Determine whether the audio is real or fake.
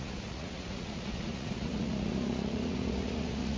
fake